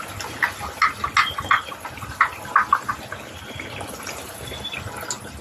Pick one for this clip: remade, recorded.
recorded